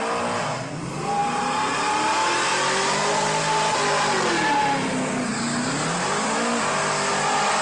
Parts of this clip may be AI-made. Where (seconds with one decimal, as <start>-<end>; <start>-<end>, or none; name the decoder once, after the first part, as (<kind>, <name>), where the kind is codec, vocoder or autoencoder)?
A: none